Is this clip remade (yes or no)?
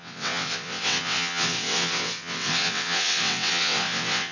yes